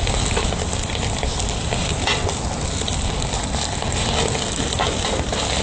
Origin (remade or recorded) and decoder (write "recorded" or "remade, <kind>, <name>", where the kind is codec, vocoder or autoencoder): recorded